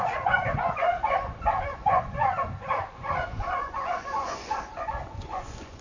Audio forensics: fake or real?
fake